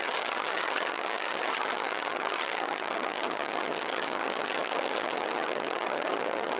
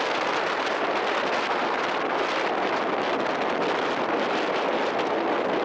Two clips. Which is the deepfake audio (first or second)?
first